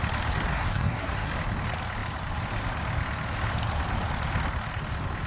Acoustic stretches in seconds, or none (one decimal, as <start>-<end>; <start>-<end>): 0.0-0.5; 1.3-5.3